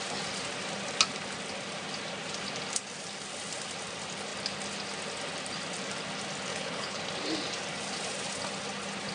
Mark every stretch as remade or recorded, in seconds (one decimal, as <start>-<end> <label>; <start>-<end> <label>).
0.0-6.5 recorded; 6.5-7.0 remade; 7.0-9.1 recorded